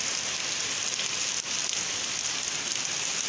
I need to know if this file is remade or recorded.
recorded